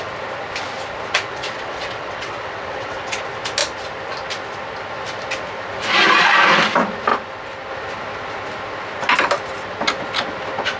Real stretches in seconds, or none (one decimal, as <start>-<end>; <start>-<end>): 0.0-1.3; 3.2-10.8